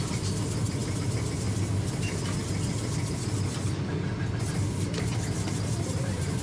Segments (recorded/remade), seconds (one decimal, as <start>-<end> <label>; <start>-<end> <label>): 0.0-6.4 recorded